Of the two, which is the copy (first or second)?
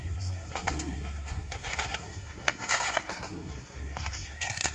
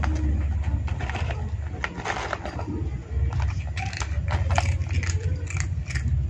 first